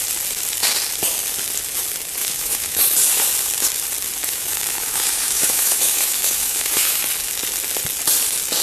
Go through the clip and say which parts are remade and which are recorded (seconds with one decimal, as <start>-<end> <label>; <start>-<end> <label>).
0.0-2.2 recorded; 2.2-2.8 remade; 2.8-4.2 recorded; 4.2-7.0 remade; 7.0-8.6 recorded

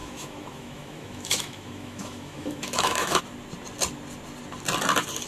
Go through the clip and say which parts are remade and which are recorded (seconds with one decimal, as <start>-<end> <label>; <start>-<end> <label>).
0.0-3.2 remade; 3.2-5.3 recorded

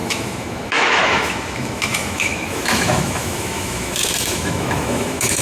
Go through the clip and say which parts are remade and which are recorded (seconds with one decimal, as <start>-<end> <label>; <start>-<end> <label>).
0.0-5.4 remade

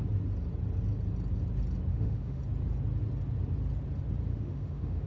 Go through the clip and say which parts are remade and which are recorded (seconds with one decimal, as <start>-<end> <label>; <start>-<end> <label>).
0.0-1.9 recorded; 1.9-2.4 remade; 2.4-4.3 recorded; 4.3-5.1 remade

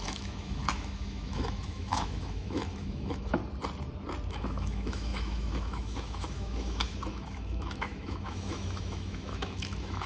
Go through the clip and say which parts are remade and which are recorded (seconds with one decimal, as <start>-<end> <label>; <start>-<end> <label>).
0.0-3.4 remade; 3.4-4.3 recorded; 4.3-10.1 remade

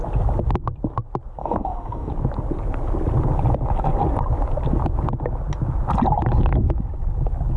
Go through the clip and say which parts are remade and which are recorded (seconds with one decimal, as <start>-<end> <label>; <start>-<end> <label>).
0.0-1.4 recorded; 1.4-2.1 remade; 2.1-7.6 recorded

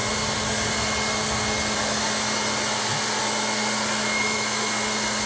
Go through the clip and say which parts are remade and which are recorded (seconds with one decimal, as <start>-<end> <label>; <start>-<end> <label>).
0.0-4.0 recorded; 4.0-4.7 remade; 4.7-5.3 recorded

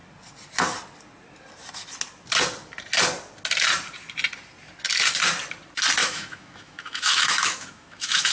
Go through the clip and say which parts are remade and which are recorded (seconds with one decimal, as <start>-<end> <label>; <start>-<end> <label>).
0.0-6.0 recorded; 6.0-8.3 remade